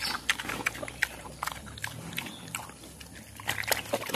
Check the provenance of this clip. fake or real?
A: real